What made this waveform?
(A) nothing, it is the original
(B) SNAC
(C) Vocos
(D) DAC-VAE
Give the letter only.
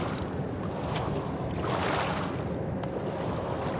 A